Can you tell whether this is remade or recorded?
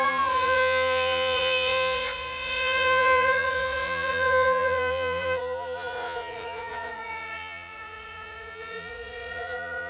remade